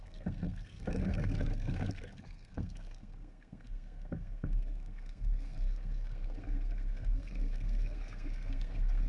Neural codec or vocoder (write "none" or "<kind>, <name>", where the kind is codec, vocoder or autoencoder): codec, SNAC